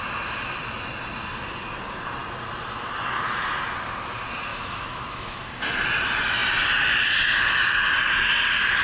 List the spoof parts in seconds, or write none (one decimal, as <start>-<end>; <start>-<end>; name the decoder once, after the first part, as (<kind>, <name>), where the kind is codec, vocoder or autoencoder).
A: 4.5-5.4 (autoencoder, DAC-VAE)